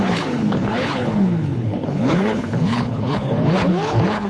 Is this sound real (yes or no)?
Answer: no